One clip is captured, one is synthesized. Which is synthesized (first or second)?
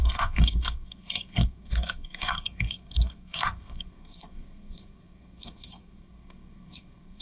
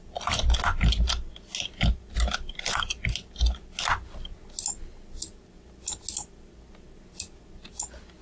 first